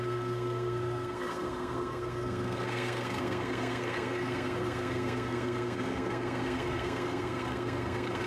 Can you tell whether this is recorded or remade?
remade